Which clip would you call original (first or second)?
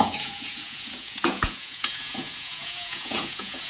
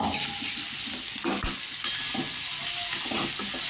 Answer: second